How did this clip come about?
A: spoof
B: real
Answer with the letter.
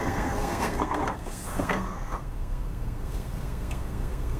A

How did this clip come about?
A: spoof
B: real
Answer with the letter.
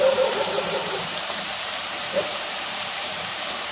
A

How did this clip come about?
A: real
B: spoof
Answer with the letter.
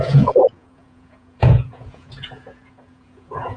B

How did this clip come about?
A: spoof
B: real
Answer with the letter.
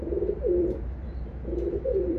A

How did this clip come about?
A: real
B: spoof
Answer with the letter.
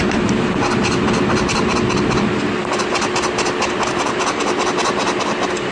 A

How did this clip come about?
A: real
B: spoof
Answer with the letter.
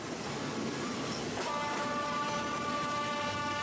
A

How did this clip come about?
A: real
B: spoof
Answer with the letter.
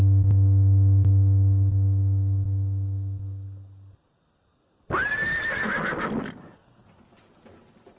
A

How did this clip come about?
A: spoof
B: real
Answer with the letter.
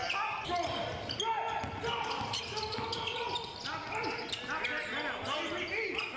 B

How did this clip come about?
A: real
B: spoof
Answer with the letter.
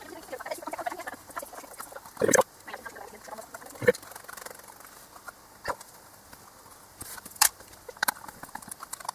B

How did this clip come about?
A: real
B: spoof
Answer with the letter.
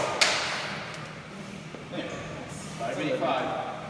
A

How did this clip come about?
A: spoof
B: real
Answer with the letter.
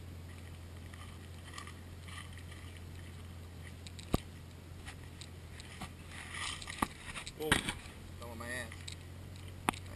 B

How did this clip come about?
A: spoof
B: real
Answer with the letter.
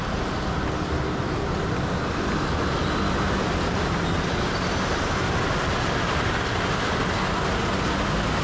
B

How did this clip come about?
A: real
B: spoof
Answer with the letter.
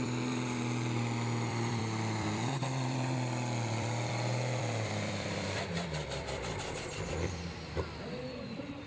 B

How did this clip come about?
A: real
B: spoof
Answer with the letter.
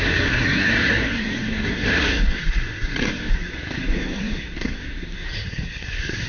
B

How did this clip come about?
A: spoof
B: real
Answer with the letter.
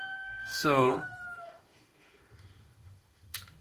A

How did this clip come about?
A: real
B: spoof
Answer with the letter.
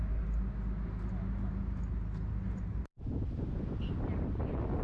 A